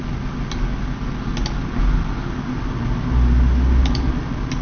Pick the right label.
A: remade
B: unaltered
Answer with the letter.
B